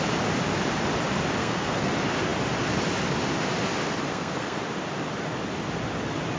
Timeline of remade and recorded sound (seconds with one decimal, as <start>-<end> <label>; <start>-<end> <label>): 0.0-1.4 recorded; 1.4-1.9 remade; 1.9-4.1 recorded; 4.1-4.6 remade; 4.6-6.4 recorded

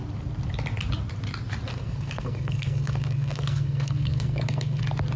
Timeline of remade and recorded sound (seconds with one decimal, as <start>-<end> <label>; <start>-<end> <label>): 0.0-1.7 recorded; 1.7-4.8 remade; 4.8-5.2 recorded

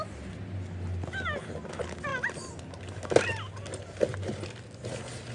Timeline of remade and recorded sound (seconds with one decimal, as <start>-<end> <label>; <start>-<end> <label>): 0.0-5.3 recorded